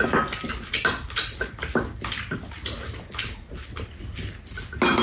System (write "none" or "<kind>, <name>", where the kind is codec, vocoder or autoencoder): none